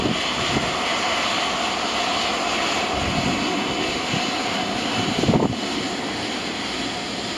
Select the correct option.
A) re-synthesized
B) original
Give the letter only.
B